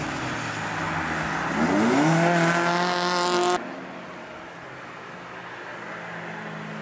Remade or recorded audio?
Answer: recorded